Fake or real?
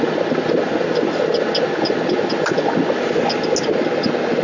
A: real